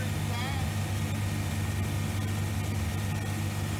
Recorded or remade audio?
recorded